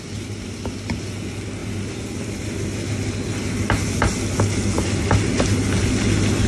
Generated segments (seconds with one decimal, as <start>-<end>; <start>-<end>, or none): none